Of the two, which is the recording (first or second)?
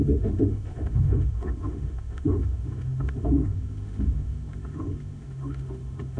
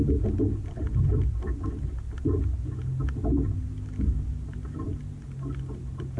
second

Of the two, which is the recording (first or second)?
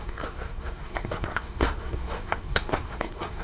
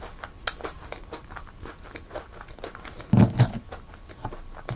second